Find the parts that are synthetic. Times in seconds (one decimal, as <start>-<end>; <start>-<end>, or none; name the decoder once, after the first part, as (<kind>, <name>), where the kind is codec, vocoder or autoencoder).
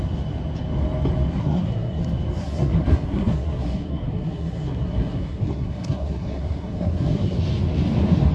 1.4-2.0 (codec, SNAC); 2.4-7.4